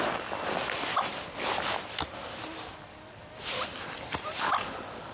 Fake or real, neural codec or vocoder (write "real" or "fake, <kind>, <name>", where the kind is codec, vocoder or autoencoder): real